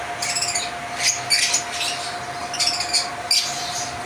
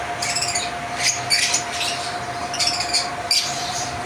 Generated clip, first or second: second